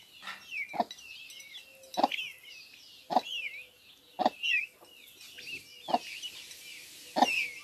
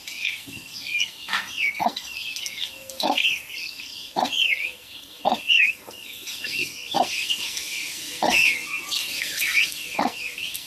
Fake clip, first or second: second